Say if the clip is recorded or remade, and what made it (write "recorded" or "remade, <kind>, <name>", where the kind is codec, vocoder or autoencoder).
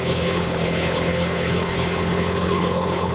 remade, codec, HILCodec